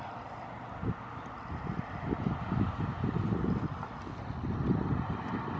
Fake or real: real